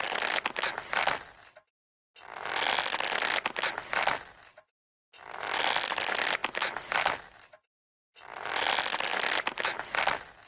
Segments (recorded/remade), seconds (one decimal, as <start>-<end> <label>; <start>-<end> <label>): 0.0-10.5 recorded